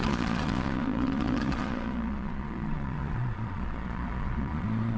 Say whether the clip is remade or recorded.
remade